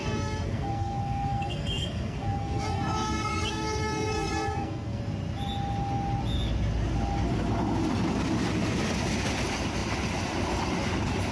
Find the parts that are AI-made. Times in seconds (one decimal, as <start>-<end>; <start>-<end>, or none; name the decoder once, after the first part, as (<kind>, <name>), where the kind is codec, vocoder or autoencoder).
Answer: 0.0-5.0 (codec, SNAC)